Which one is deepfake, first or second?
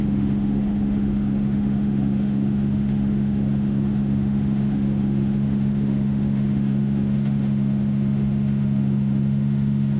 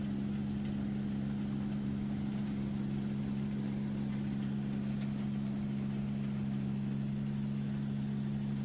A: first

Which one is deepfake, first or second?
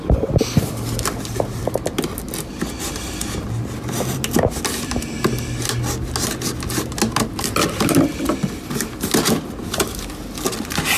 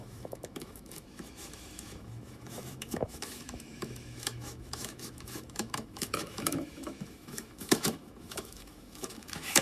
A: second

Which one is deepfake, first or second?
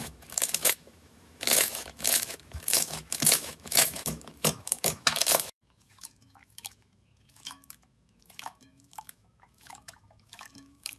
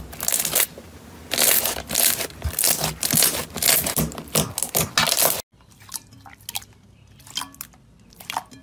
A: first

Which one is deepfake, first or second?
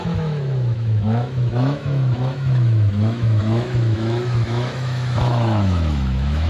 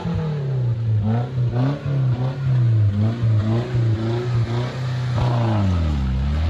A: first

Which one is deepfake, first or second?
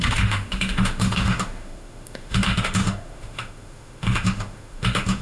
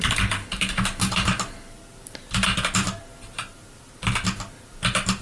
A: first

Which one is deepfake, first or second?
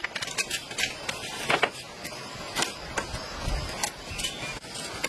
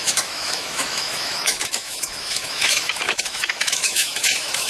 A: second